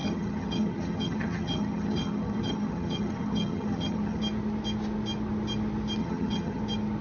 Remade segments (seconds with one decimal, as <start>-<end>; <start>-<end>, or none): 0.0-4.2; 6.0-6.6